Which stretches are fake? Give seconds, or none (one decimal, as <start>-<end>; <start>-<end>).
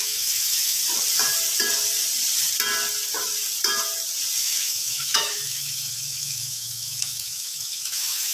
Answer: 0.0-0.8; 4.4-8.3